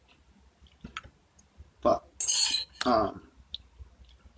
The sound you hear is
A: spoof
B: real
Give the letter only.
B